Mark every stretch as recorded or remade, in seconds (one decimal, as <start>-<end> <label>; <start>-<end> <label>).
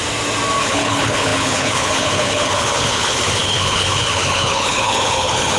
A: 0.0-0.6 recorded; 0.6-5.6 remade